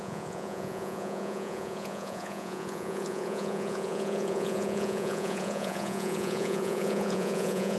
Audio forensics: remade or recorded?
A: remade